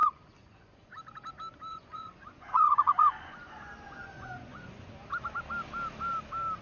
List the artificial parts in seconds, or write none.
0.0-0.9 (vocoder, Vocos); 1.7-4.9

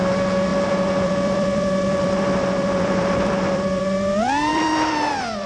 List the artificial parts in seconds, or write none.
0.5-3.8 (vocoder, BigVGAN v2); 4.5-5.5

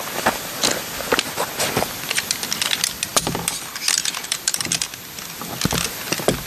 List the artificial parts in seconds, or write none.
none

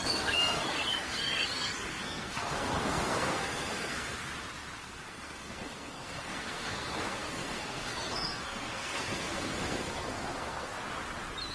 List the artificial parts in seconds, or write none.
0.0-4.2 (codec, SNAC); 4.8-10.7